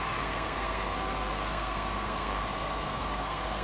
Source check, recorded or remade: remade